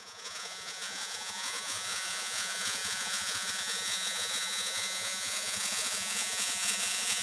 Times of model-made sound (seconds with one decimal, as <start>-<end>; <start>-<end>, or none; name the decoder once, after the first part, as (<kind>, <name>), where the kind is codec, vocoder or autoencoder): 0.0-7.2 (vocoder, Vocos)